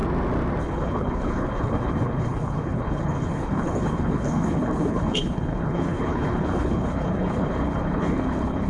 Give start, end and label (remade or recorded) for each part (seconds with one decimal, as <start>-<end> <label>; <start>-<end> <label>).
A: 0.0-0.6 recorded; 0.6-8.7 remade

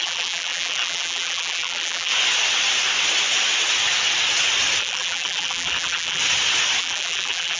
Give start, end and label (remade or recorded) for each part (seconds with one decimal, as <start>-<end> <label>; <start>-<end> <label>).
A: 0.0-2.1 remade; 2.1-4.8 recorded; 4.8-6.2 remade; 6.2-6.8 recorded; 6.8-7.6 remade

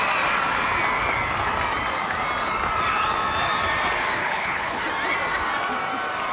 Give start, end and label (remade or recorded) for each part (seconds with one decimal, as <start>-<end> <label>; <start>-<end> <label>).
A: 0.0-4.2 recorded; 4.2-4.8 remade; 4.8-6.3 recorded

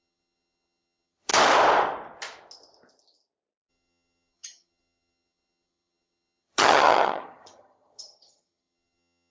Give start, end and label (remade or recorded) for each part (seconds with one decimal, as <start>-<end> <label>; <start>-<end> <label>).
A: 0.0-1.3 remade; 1.3-3.7 recorded; 3.7-9.3 remade

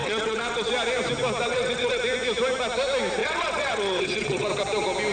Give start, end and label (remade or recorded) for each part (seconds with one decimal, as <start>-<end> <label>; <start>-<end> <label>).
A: 0.0-0.7 remade; 0.7-1.5 recorded; 1.5-2.0 remade; 2.0-3.2 recorded; 3.2-4.5 remade; 4.5-5.1 recorded

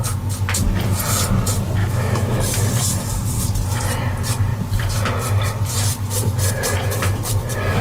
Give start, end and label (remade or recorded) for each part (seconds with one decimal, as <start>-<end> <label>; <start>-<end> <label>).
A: 0.0-1.8 recorded; 1.8-2.4 remade; 2.4-7.8 recorded

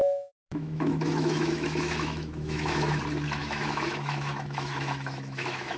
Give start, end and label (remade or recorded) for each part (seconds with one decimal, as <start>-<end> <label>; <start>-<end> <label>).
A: 0.0-3.0 remade; 3.0-3.4 recorded; 3.4-5.8 remade